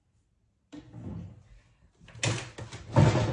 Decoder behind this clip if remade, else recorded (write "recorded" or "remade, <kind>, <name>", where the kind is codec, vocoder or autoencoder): recorded